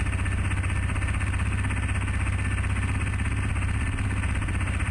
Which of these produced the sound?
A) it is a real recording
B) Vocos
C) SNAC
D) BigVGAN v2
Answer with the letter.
A